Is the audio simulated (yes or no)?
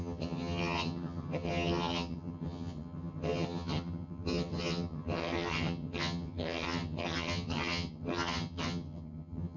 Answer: yes